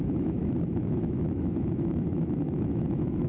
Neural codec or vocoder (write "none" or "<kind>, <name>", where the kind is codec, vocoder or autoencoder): autoencoder, DAC-VAE